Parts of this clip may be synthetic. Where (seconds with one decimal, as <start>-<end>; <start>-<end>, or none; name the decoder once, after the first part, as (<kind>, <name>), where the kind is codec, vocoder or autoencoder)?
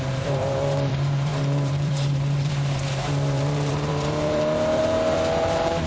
0.0-5.9 (vocoder, BigVGAN v2)